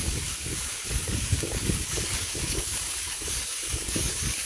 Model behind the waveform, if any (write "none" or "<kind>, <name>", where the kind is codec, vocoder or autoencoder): codec, DAC